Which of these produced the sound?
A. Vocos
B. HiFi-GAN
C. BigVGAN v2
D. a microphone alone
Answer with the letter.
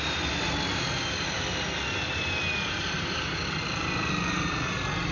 D